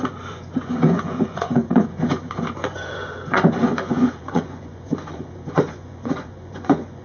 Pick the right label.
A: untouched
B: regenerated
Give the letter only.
B